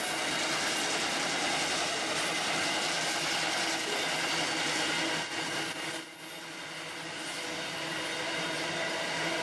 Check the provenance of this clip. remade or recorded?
recorded